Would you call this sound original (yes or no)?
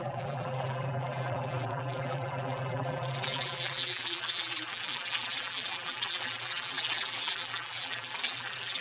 no